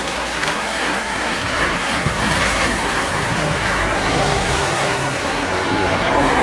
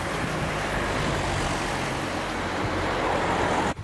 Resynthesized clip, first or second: first